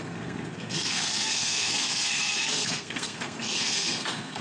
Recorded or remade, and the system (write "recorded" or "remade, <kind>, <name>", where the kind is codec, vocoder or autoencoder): remade, codec, SNAC